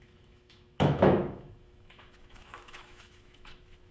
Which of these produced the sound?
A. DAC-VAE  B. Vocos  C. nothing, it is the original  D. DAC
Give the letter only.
A